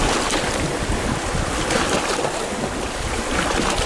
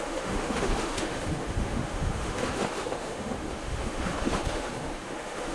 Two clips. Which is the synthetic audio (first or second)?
second